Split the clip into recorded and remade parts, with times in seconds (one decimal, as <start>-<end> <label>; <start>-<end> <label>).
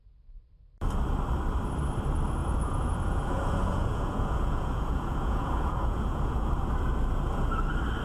0.0-2.4 recorded; 2.4-6.5 remade; 6.5-8.0 recorded